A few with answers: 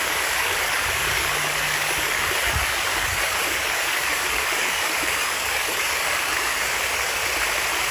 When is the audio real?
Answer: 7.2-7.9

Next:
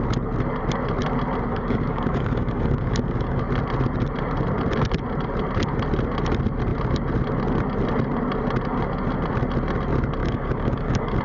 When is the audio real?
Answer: 0.0-1.5; 3.4-10.2

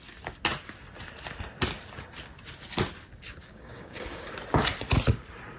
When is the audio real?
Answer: 0.0-3.5; 4.3-5.6

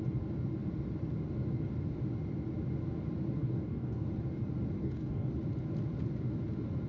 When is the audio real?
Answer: 0.0-3.4; 4.1-4.8; 5.3-6.9

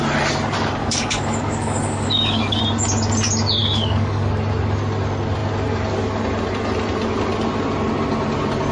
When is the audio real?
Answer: 0.0-0.8; 2.6-3.6; 4.3-8.7

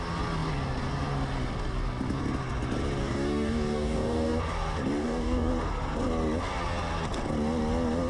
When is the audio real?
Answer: 0.0-3.0; 4.4-5.0; 5.5-8.1